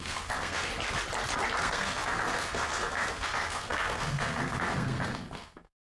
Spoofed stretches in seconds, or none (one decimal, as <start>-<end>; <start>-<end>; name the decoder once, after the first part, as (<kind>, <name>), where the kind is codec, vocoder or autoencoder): 0.0-0.7 (codec, SNAC); 1.6-5.9